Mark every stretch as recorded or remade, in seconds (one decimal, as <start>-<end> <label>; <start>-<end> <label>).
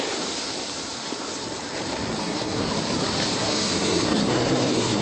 0.0-2.2 recorded; 2.2-2.7 remade; 2.7-3.4 recorded; 3.4-5.0 remade